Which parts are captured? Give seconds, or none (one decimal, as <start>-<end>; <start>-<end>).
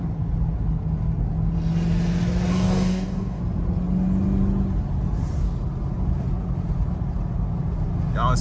0.0-2.5; 3.4-8.4